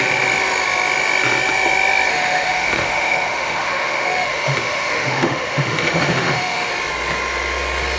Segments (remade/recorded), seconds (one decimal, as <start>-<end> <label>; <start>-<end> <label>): 0.0-2.1 recorded; 2.1-6.7 remade; 6.7-8.0 recorded